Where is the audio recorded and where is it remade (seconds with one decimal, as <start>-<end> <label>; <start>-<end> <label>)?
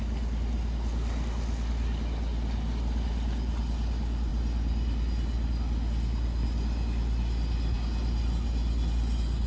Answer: 0.0-9.5 recorded